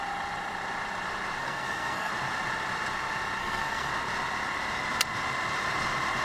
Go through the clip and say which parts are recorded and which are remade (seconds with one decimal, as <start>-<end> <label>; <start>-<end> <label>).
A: 0.0-1.4 recorded; 1.4-2.1 remade; 2.1-3.4 recorded; 3.4-3.9 remade; 3.9-6.2 recorded